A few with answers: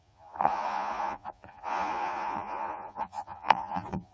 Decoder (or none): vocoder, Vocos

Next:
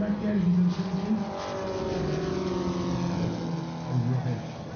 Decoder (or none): none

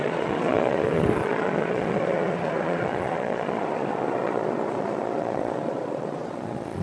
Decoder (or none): vocoder, Vocos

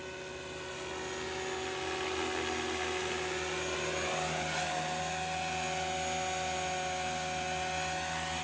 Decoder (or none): none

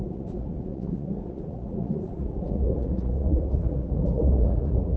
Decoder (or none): vocoder, Vocos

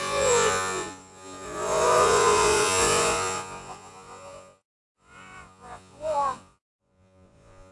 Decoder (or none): vocoder, Vocos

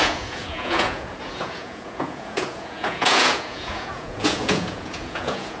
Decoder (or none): vocoder, Vocos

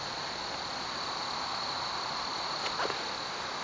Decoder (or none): none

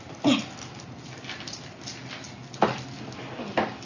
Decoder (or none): none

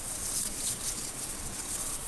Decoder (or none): vocoder, Vocos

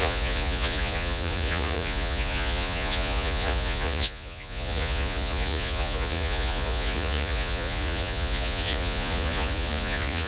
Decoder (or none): vocoder, Vocos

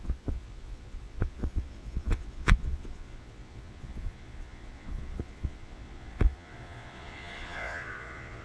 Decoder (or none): vocoder, Vocos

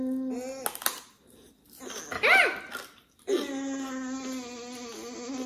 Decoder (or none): none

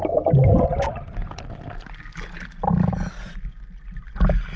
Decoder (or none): none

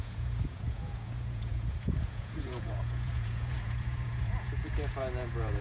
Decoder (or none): vocoder, Vocos